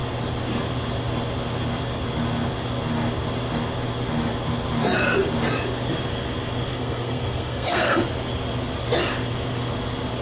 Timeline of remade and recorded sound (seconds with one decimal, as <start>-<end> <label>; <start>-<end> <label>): 0.0-6.7 recorded; 6.7-8.0 remade; 8.0-10.2 recorded